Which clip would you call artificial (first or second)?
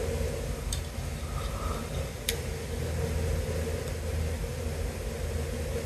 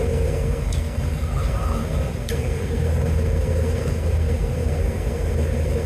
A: second